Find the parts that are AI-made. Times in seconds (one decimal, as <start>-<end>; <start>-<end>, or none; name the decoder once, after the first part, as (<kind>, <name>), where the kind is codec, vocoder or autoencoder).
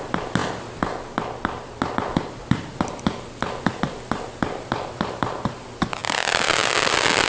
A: none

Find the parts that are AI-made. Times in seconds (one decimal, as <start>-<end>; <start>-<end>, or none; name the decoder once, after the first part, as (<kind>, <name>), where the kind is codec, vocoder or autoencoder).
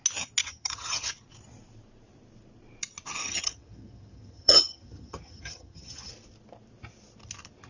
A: 0.4-1.1 (vocoder, HiFi-GAN); 3.2-6.1